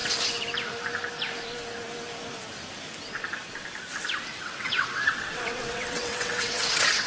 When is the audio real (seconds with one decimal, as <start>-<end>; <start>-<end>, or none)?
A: 0.0-4.3